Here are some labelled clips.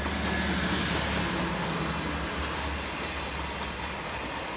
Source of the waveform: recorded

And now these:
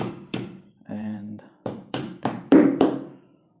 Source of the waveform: remade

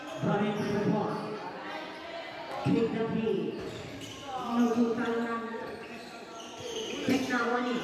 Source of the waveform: recorded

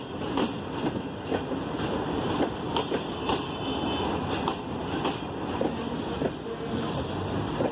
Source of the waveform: recorded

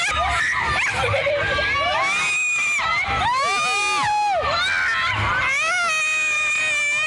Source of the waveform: recorded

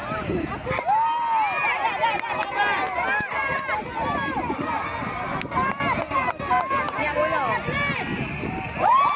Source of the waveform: recorded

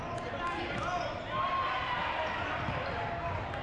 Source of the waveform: recorded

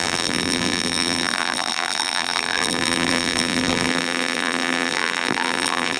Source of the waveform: remade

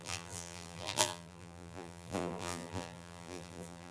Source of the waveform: remade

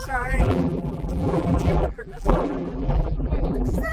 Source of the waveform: remade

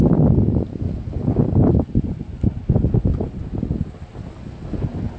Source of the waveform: recorded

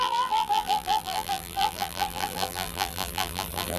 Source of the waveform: remade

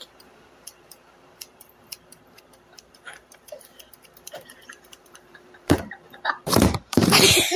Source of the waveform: remade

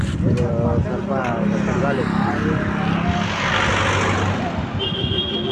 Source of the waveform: recorded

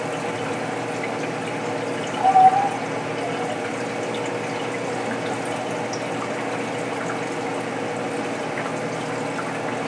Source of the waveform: recorded